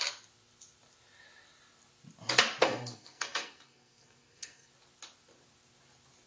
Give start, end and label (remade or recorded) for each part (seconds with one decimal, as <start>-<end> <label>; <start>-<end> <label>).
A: 0.0-2.6 recorded; 2.6-4.7 remade; 4.7-6.3 recorded